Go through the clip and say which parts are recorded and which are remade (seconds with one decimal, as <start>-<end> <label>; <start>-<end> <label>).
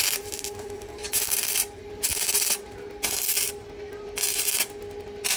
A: 0.0-2.1 remade; 2.1-5.4 recorded